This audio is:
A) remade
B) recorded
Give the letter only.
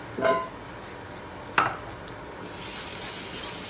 B